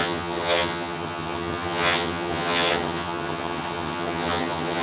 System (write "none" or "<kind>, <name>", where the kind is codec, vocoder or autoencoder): vocoder, HiFi-GAN